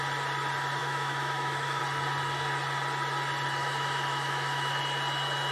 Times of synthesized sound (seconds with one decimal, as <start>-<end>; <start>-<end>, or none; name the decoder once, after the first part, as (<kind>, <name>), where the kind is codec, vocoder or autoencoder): 0.8-1.8 (autoencoder, DAC-VAE); 3.6-4.8